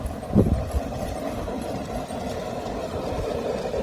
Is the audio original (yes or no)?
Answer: no